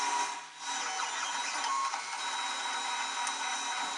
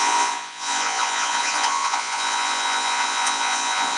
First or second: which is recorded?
first